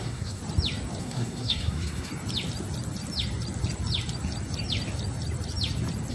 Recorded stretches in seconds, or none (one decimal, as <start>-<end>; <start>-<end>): 0.4-1.0; 2.1-6.1